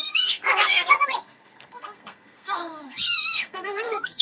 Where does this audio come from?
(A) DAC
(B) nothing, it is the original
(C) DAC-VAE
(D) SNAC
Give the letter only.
D